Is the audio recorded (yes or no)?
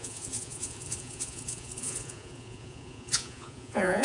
no